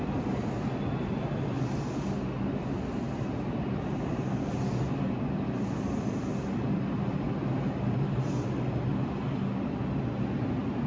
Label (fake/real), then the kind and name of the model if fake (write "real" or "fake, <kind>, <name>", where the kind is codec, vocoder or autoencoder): real